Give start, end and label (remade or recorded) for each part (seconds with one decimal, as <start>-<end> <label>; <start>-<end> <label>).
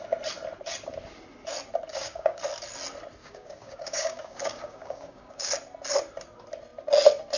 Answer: 0.0-1.9 recorded; 1.9-2.4 remade; 2.4-3.2 recorded; 3.2-5.5 remade; 5.5-7.4 recorded